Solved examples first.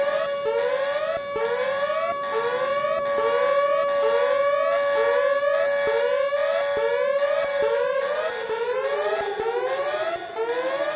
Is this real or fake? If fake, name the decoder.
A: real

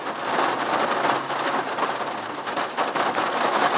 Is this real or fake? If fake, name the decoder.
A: real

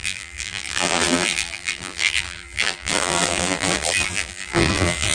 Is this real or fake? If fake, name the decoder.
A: fake, vocoder, BigVGAN v2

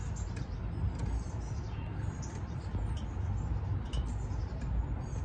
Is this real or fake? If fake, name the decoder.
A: real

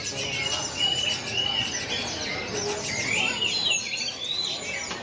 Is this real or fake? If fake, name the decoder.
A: real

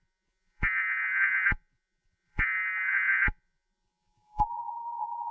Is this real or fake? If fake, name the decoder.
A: fake, vocoder, Vocos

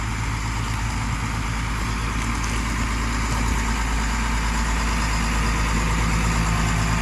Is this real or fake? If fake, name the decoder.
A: real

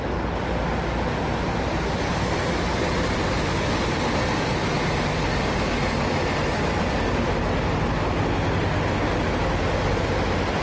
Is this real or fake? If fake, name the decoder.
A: real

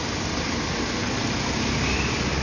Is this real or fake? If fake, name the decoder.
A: real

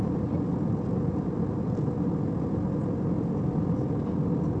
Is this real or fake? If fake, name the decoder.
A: real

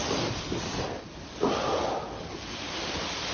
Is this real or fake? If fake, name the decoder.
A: real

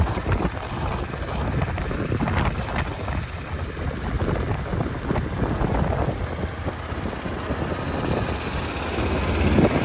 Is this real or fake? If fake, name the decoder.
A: real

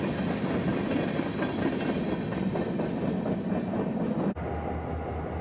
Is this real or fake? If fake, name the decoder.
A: real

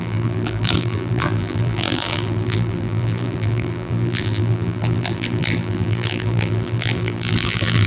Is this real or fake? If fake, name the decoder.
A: fake, vocoder, BigVGAN v2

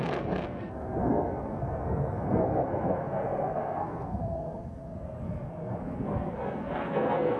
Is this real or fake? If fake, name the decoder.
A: fake, codec, SNAC